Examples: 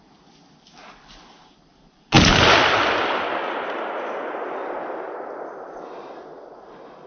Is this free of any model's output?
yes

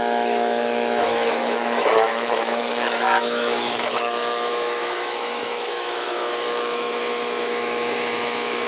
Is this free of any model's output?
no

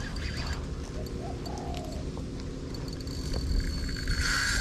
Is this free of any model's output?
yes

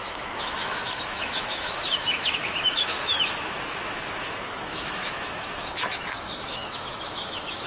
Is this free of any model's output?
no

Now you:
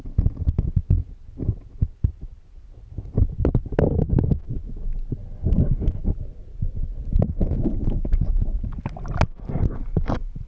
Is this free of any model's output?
yes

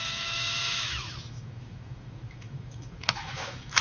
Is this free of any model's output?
no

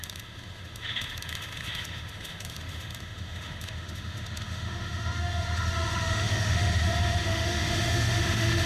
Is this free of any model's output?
no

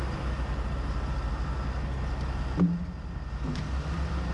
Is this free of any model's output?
yes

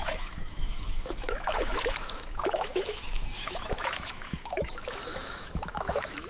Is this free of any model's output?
no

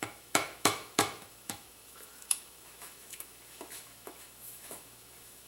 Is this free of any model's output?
no